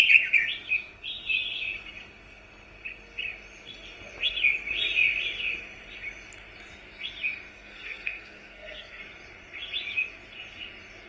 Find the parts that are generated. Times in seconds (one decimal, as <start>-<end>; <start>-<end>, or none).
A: 7.5-9.0